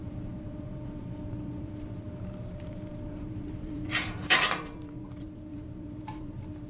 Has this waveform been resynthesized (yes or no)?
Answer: yes